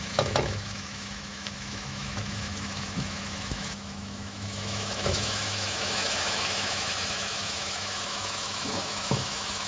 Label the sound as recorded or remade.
remade